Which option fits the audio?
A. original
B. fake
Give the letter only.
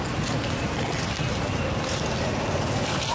A